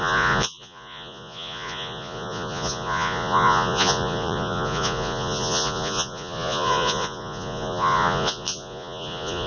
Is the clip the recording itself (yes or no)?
no